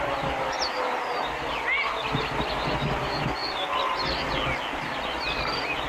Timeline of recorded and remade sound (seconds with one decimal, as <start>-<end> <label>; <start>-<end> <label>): 0.0-5.9 recorded